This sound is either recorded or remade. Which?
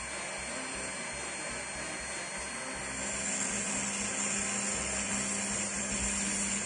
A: recorded